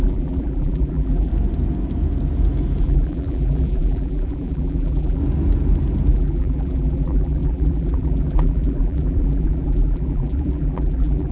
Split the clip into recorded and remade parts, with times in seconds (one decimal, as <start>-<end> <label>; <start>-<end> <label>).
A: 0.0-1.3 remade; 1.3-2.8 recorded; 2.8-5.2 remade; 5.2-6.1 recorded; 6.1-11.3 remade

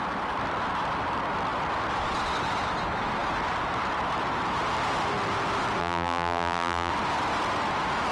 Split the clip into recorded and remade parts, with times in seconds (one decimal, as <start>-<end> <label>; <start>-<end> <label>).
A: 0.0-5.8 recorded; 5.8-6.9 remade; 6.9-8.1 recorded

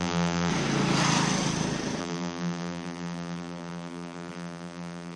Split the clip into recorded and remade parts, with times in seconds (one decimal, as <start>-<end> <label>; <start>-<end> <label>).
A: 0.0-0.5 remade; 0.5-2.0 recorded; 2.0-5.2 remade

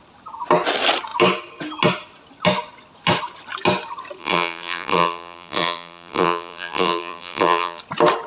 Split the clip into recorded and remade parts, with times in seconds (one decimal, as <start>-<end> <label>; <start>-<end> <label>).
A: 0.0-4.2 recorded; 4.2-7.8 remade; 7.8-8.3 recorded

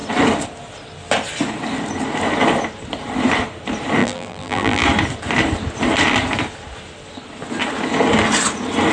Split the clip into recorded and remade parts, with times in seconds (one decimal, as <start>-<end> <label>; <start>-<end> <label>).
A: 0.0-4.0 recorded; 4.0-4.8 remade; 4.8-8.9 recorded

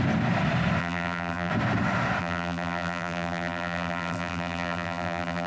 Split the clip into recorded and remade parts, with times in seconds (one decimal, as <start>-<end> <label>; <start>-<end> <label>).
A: 0.0-0.8 recorded; 0.8-1.5 remade; 1.5-2.2 recorded; 2.2-5.5 remade